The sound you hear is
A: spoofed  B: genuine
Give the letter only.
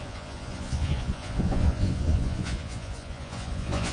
A